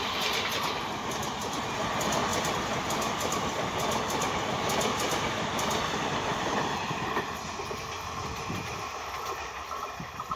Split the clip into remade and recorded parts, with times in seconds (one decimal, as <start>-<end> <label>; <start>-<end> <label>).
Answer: 0.0-10.4 recorded